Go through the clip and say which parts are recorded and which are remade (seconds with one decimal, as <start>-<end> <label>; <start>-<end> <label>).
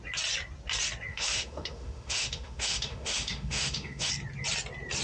0.0-1.1 recorded; 1.1-4.1 remade; 4.1-5.0 recorded